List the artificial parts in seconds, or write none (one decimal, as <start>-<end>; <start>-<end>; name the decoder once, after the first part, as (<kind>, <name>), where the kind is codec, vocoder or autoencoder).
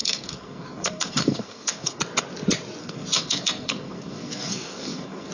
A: 0.0-2.0 (codec, SNAC); 2.8-5.3